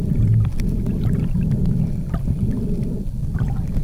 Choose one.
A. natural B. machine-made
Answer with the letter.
A